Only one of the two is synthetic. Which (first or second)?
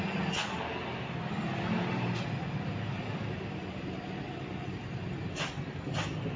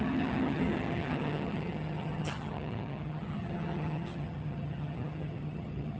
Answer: second